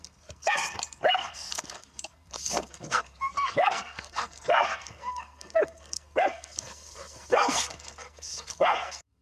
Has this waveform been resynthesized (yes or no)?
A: yes